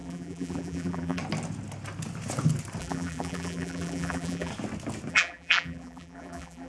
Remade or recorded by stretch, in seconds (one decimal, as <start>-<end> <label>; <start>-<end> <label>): 0.0-1.2 remade; 1.2-2.8 recorded; 2.8-4.5 remade; 4.5-5.1 recorded; 5.1-6.7 remade